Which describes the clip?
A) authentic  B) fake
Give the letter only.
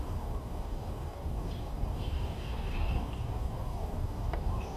B